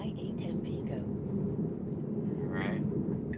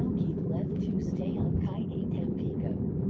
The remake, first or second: second